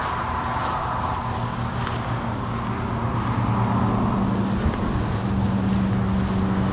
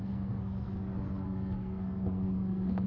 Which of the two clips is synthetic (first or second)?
second